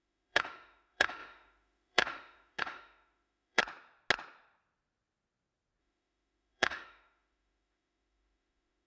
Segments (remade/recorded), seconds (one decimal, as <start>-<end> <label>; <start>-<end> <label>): 0.0-3.6 remade; 3.6-5.8 recorded; 5.8-8.9 remade